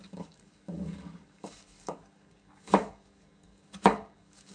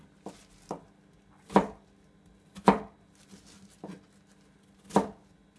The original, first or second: second